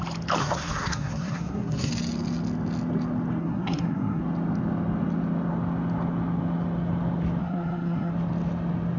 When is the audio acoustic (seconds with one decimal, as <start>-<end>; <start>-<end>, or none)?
0.0-0.4; 1.9-3.4; 4.2-7.4; 8.1-9.0